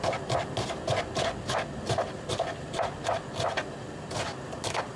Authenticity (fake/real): real